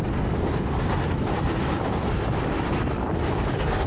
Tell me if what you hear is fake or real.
real